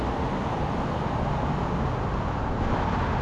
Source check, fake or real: real